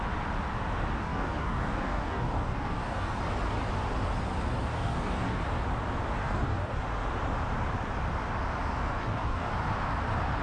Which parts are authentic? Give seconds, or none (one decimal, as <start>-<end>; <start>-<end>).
0.0-1.0; 3.2-4.7; 5.4-6.2; 6.8-9.0; 9.5-10.4